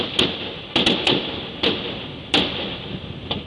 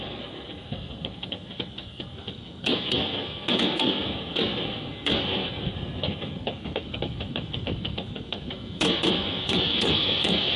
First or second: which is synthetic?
second